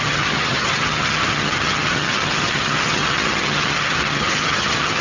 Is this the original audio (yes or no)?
no